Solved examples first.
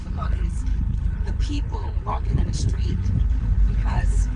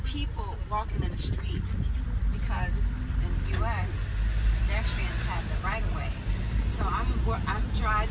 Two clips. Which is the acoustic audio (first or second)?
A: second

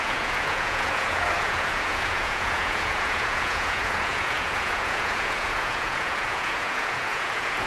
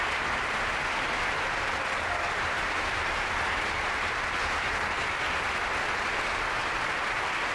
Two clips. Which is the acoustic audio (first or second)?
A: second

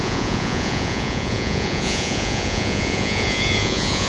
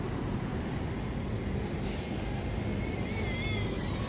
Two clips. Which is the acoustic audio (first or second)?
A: second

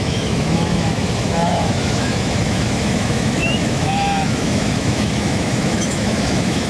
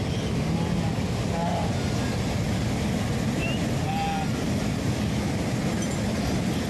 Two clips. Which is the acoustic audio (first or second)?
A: second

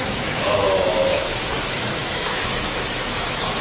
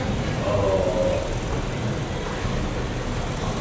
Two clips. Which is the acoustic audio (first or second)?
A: second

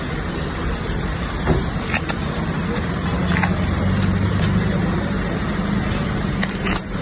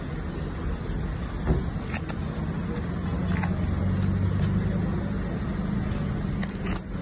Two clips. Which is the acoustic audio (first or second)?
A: second